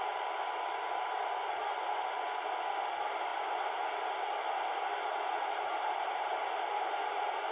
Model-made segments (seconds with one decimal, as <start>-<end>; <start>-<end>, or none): none